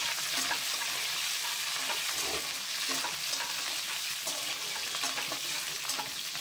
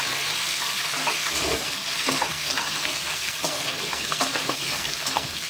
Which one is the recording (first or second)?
first